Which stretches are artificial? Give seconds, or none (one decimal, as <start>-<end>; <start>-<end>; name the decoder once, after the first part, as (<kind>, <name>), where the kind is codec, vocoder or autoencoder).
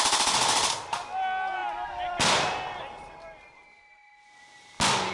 none